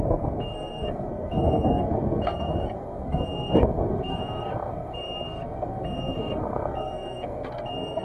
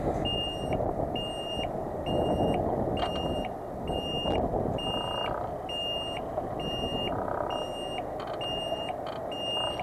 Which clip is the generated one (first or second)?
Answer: first